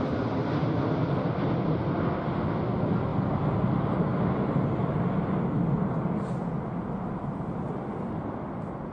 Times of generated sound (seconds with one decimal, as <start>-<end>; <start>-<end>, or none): none